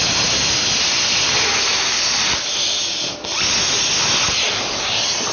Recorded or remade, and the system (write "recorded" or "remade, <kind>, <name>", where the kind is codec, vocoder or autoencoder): recorded